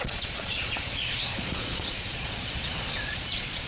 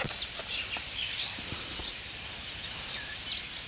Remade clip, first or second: first